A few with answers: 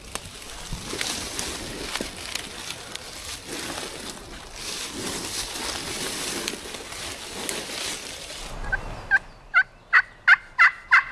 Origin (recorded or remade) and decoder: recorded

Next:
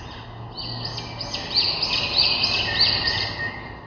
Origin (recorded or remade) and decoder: recorded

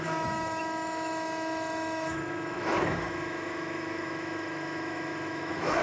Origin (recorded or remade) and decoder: remade, autoencoder, DAC-VAE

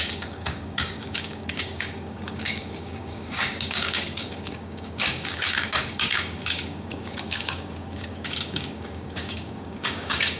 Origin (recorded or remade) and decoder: remade, codec, DAC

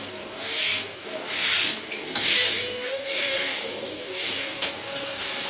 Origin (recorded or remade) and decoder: remade, codec, DAC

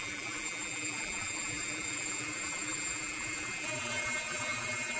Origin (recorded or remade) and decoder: remade, vocoder, BigVGAN v2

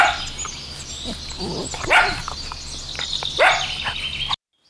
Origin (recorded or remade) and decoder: recorded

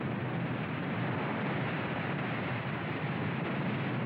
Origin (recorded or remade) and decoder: remade, vocoder, BigVGAN v2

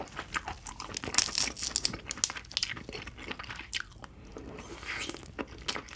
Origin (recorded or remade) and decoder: recorded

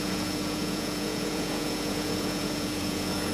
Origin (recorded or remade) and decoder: remade, vocoder, Vocos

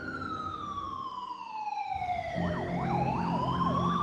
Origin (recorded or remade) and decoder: recorded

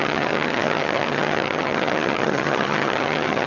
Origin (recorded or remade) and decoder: remade, vocoder, HiFi-GAN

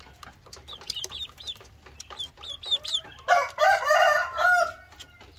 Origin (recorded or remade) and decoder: recorded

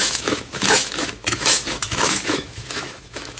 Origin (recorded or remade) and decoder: remade, autoencoder, DAC-VAE